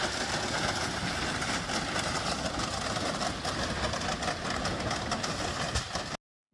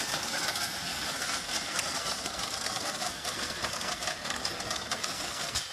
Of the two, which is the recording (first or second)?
first